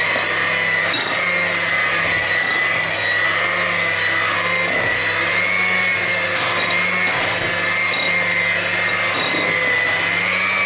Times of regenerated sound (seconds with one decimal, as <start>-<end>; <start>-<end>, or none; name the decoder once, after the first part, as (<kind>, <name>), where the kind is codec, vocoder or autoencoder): none